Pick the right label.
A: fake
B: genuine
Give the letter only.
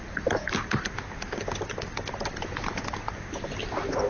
B